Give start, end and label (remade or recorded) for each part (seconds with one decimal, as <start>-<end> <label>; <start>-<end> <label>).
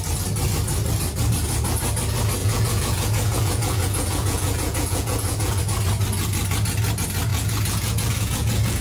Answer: 0.0-2.4 recorded; 2.4-5.6 remade; 5.6-7.3 recorded; 7.3-8.8 remade